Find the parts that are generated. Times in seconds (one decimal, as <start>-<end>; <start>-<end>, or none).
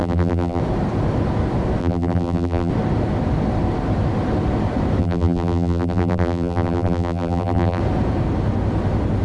0.0-0.6; 1.8-2.7; 5.0-7.8